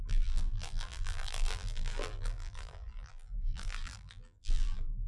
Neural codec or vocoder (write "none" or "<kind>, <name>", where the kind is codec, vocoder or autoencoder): vocoder, BigVGAN v2